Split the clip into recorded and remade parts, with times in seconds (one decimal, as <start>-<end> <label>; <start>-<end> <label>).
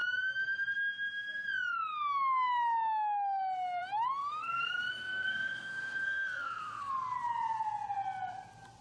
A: 0.0-4.2 recorded; 4.2-6.9 remade; 6.9-8.8 recorded